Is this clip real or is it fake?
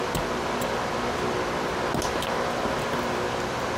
real